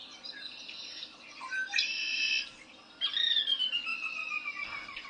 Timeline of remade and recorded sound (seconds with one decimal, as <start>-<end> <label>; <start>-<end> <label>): 0.0-2.3 remade; 2.3-5.1 recorded